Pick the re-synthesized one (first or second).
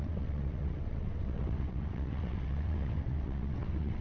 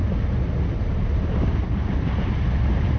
first